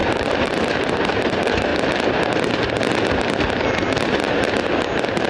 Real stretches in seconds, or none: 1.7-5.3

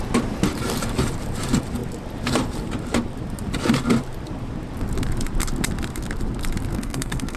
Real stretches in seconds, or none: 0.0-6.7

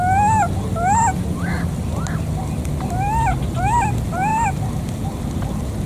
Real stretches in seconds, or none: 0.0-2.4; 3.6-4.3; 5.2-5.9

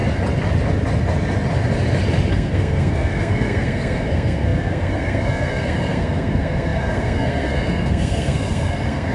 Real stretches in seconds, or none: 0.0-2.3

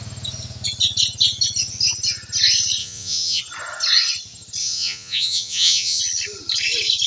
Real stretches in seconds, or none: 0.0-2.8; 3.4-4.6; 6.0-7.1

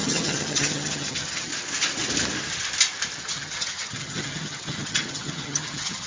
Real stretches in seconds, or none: 1.5-3.2